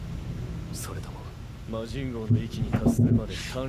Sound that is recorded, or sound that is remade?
recorded